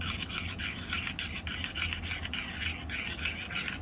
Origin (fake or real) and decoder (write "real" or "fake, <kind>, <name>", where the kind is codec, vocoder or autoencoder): real